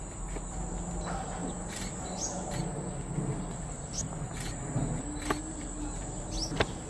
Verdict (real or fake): real